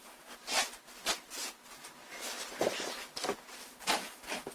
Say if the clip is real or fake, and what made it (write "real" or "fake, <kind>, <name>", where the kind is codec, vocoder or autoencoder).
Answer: real